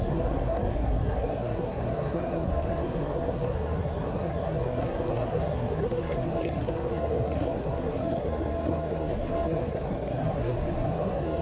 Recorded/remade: remade